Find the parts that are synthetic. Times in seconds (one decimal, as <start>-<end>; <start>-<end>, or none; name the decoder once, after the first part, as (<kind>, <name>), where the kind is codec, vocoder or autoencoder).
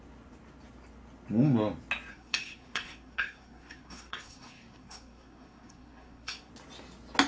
2.1-6.5 (codec, SNAC)